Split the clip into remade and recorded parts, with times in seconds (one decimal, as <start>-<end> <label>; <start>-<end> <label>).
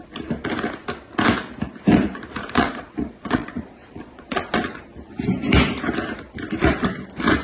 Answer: 0.0-2.4 recorded; 2.4-4.8 remade; 4.8-7.4 recorded